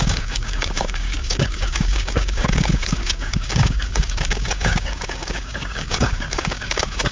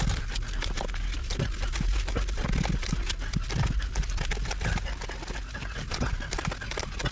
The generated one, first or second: first